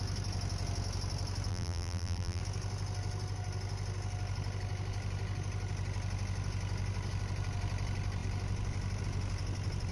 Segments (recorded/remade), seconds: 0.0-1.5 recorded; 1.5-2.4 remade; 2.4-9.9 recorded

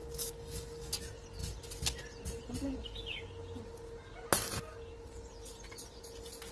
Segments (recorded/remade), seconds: 0.0-0.9 remade; 0.9-6.5 recorded

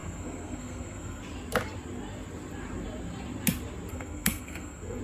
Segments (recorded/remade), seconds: 0.0-1.2 remade; 1.2-3.9 recorded; 3.9-5.0 remade

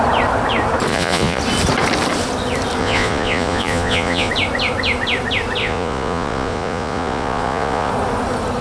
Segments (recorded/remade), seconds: 0.0-0.9 recorded; 0.9-1.4 remade; 1.4-2.8 recorded; 2.8-4.3 remade; 4.3-5.6 recorded; 5.6-7.9 remade; 7.9-8.6 recorded

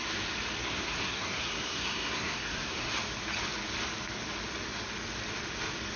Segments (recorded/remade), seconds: 0.0-0.6 recorded; 0.6-2.9 remade; 2.9-6.0 recorded

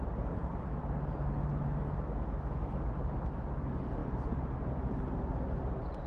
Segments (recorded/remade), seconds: 0.0-1.5 recorded; 1.5-3.3 remade; 3.3-6.1 recorded